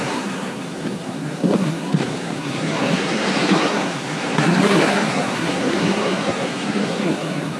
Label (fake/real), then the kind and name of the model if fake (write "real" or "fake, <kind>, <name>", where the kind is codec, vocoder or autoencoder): fake, codec, SNAC